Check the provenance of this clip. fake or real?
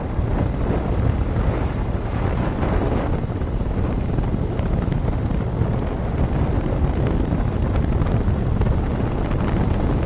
real